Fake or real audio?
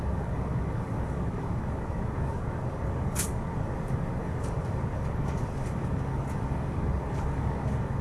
fake